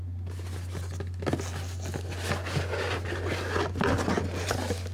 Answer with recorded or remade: recorded